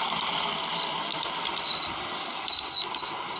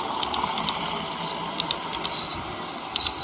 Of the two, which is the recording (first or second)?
second